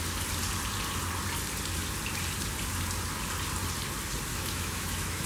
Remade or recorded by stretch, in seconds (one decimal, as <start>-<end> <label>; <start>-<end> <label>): 0.0-4.3 recorded; 4.3-5.3 remade